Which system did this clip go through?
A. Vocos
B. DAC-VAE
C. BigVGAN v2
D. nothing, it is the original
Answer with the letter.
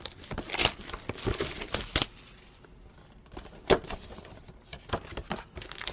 D